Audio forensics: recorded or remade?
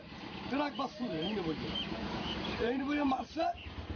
remade